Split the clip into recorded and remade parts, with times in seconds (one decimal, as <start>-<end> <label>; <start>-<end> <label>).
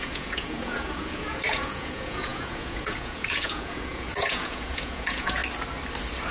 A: 0.0-5.4 remade; 5.4-6.3 recorded